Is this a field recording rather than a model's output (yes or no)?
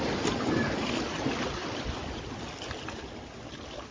yes